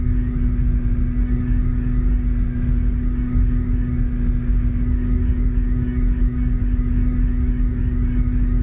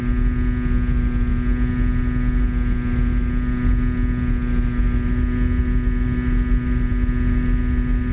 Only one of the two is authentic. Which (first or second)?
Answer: second